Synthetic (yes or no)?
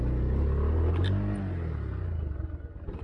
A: no